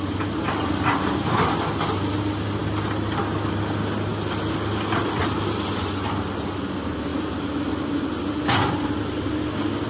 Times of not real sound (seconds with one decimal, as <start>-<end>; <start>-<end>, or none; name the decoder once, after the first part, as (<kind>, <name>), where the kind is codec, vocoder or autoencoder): none